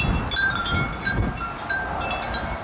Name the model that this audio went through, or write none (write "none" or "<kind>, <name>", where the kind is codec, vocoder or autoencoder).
none